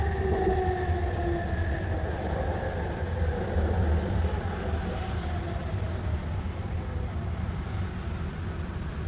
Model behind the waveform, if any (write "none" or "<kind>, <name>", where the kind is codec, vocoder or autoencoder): none